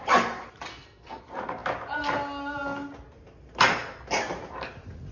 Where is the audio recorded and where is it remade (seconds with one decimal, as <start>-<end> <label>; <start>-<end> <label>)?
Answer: 0.0-0.7 recorded; 0.7-1.2 remade; 1.2-5.1 recorded